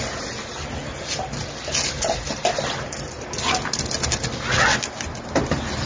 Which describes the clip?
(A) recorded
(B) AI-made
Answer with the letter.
A